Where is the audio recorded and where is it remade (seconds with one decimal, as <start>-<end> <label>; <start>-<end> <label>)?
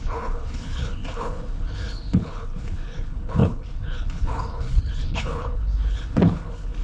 0.0-6.8 remade